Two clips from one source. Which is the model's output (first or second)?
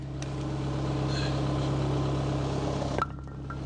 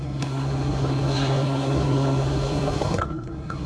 second